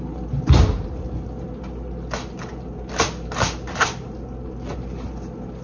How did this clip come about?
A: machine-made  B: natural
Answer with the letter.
B